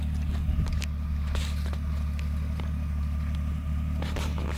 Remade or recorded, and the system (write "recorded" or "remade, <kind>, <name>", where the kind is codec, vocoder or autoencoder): recorded